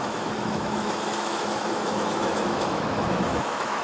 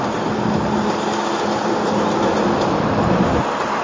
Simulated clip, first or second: first